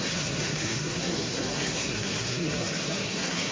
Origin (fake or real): fake